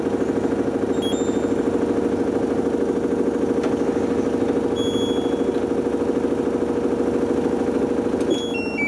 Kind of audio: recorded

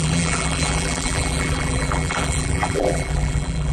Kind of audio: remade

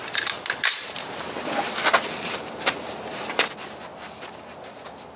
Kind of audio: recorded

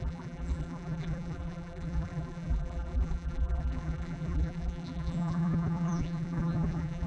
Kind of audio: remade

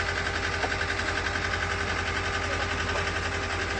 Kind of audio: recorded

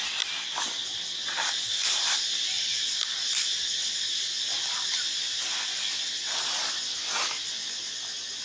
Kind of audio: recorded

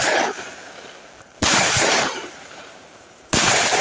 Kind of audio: remade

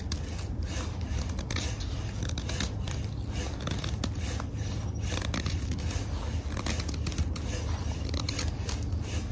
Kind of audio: recorded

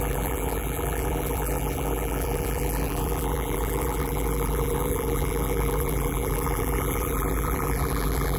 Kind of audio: remade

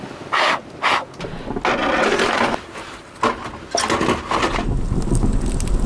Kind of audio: recorded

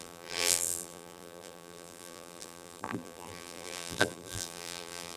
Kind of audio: remade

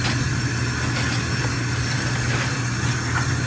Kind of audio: recorded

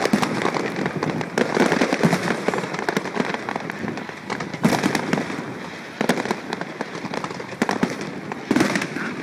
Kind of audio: remade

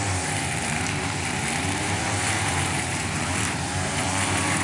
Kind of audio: remade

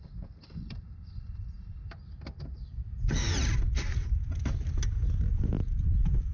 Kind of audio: recorded